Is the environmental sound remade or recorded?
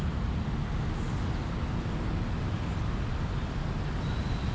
recorded